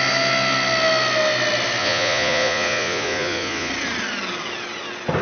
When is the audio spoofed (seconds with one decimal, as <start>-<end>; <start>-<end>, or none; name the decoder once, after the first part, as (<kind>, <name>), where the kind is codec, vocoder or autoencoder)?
1.8-3.7 (vocoder, Vocos)